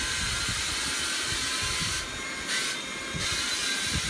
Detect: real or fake real